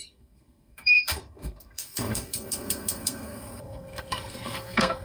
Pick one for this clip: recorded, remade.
remade